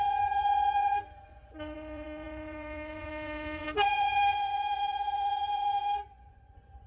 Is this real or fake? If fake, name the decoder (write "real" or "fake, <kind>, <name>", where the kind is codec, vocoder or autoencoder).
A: fake, vocoder, Vocos